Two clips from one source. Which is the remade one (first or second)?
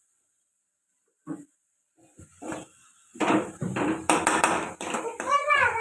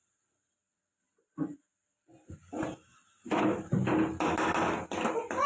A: first